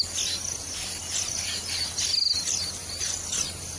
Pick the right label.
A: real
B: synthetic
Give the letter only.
A